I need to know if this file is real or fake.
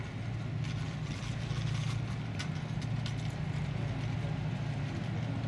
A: real